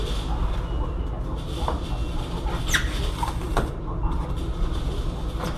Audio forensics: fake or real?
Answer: real